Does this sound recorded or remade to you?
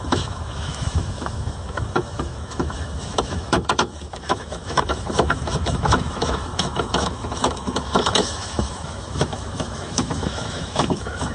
remade